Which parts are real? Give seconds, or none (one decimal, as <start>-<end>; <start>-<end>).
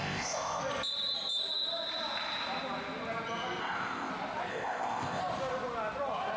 0.6-3.6; 4.1-4.5; 5.2-6.4